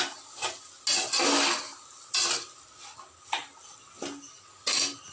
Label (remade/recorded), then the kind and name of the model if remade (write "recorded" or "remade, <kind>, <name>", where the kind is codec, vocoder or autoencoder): recorded